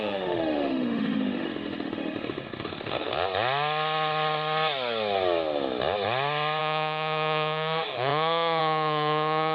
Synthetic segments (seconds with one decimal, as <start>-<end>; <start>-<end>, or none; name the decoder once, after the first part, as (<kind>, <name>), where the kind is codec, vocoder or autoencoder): 0.0-3.1 (autoencoder, DAC-VAE); 6.6-9.5